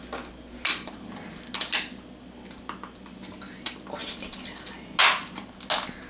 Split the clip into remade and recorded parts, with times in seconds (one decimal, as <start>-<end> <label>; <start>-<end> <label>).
0.0-6.1 recorded